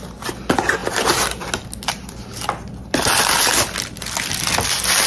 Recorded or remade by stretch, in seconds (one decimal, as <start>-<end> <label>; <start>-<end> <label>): 0.0-5.1 recorded